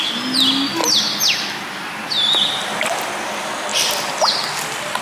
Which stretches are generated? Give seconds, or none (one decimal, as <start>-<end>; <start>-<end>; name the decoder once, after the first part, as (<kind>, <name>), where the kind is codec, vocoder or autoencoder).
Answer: none